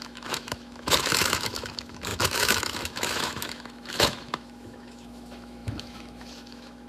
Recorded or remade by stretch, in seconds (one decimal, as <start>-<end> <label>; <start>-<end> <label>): 0.0-6.9 remade